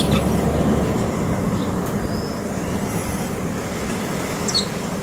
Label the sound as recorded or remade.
recorded